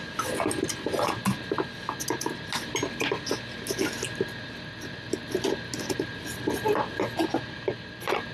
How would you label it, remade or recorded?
recorded